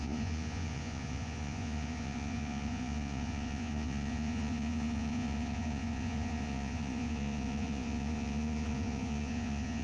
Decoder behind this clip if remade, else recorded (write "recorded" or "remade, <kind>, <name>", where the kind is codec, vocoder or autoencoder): remade, vocoder, Vocos